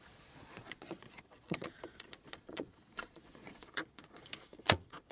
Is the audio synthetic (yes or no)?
yes